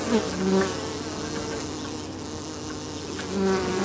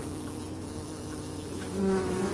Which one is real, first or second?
first